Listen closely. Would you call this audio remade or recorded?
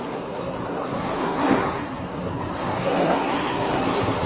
remade